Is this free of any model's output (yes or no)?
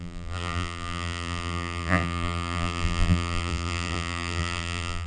no